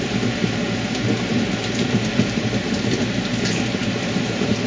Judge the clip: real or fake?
fake